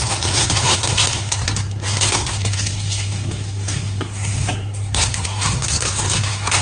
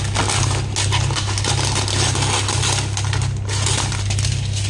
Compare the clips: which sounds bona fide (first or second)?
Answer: second